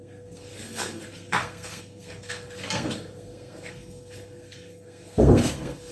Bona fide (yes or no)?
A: no